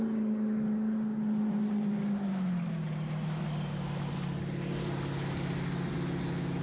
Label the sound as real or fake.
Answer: real